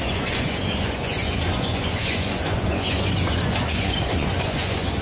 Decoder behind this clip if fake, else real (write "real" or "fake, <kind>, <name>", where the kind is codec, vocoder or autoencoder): fake, vocoder, Vocos